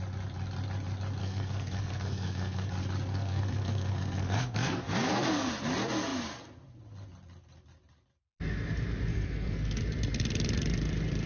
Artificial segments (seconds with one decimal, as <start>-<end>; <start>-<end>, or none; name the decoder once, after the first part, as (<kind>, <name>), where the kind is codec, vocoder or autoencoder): 1.2-2.7 (codec, SNAC); 3.1-5.5; 9.1-9.8

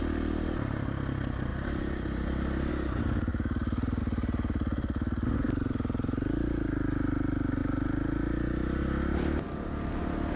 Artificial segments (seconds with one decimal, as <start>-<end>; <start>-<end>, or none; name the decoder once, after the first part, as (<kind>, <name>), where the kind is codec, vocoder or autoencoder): 1.5-2.7 (vocoder, BigVGAN v2)

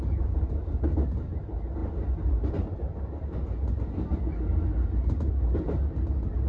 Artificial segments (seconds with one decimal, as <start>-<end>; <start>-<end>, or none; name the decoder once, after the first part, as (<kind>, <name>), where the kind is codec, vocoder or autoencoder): none

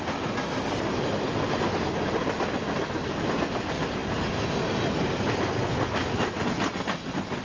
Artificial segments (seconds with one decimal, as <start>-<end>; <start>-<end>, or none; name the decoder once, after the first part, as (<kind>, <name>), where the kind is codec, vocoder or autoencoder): none

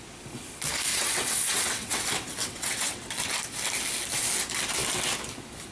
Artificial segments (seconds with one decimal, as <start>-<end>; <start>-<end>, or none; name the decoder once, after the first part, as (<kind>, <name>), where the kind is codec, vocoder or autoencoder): 0.9-2.0 (vocoder, WaveNeXt); 2.4-3.1

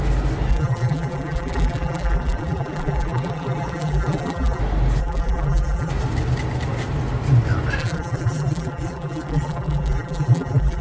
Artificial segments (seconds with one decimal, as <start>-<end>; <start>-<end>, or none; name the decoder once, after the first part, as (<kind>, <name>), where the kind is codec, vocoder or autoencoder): 0.5-4.6 (vocoder, BigVGAN v2); 5.0-5.9; 7.8-10.8

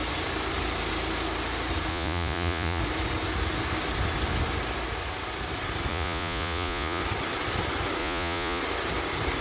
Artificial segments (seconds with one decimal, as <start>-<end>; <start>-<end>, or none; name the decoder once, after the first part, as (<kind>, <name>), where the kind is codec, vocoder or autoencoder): 1.9-2.8 (vocoder, Vocos); 5.9-7.0; 8.0-8.6

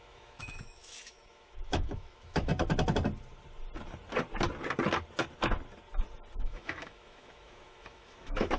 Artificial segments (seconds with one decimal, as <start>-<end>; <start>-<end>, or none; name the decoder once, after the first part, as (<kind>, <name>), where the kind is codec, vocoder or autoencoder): 0.0-2.5 (autoencoder, DAC-VAE); 6.4-8.6